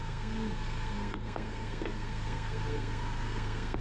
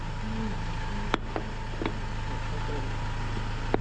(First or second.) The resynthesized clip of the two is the first